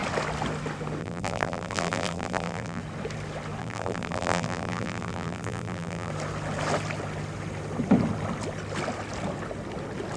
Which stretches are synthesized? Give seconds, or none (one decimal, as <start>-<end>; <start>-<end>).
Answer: 1.0-2.8; 3.6-6.1